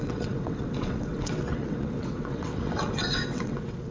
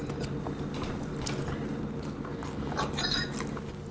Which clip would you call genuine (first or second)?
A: second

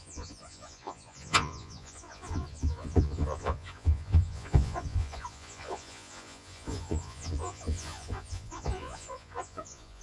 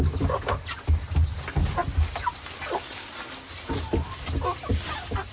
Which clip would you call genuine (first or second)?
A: second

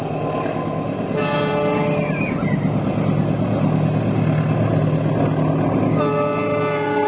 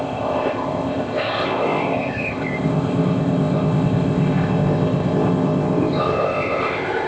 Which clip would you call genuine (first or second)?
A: first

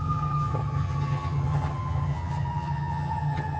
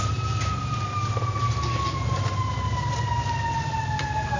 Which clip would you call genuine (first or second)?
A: second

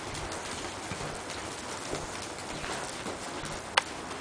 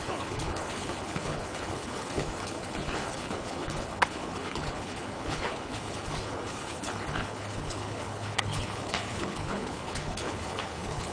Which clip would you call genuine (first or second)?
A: first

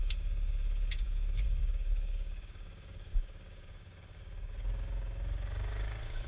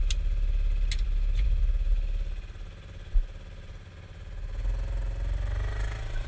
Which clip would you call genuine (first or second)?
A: second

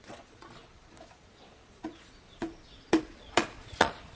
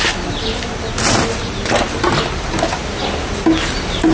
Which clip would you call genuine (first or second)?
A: second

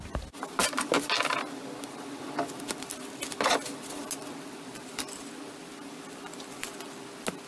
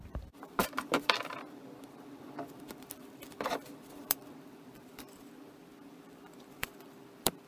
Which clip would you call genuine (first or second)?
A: first